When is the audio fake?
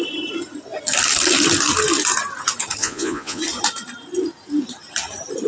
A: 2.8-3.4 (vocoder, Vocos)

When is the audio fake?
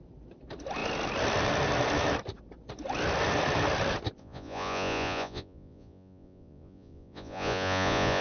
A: 4.2-8.2 (vocoder, Vocos)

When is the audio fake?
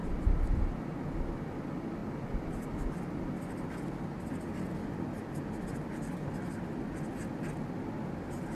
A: none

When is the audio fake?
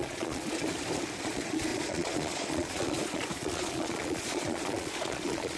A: 0.0-0.6 (vocoder, Vocos); 1.2-5.6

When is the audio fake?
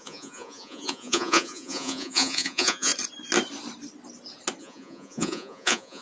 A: 0.0-2.9 (vocoder, Vocos); 4.6-6.0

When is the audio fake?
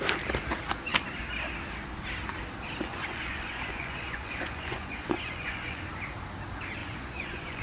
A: 2.9-5.8 (vocoder, Vocos); 6.8-7.6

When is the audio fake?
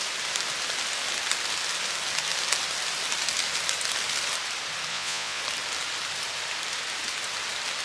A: 4.9-5.4 (vocoder, Vocos)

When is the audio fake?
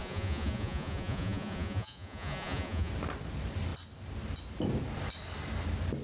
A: 0.0-2.9 (vocoder, Vocos)